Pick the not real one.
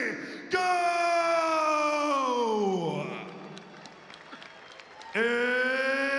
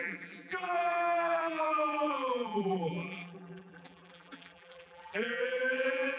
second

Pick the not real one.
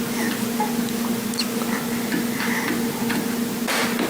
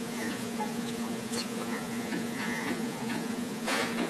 second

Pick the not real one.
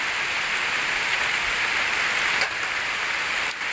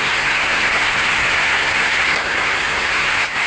second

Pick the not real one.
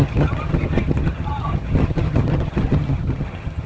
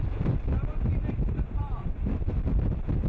first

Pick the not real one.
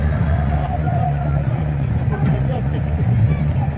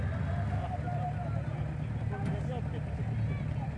first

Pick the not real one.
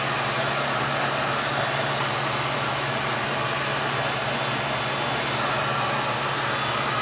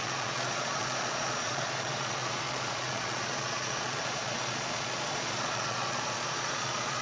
second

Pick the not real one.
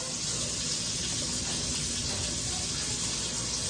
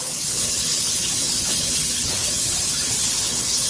second